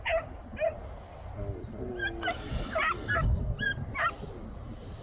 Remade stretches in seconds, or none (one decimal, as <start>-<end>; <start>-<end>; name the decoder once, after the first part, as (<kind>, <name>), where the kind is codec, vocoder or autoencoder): none